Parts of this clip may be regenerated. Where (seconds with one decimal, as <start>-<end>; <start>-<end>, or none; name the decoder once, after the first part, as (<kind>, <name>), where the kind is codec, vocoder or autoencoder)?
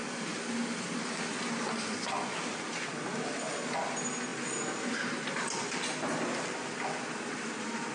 none